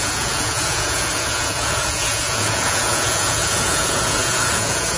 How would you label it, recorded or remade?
remade